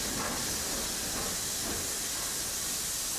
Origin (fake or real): real